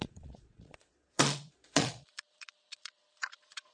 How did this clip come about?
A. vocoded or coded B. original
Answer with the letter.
A